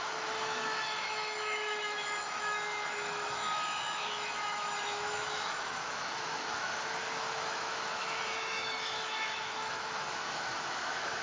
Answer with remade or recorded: remade